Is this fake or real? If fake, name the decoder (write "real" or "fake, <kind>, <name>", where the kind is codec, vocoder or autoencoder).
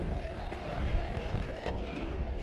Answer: fake, codec, DAC